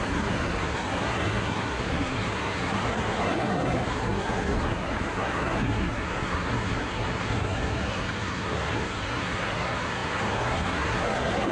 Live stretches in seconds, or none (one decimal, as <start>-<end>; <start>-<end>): none